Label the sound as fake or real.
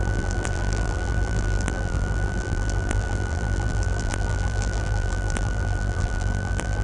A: fake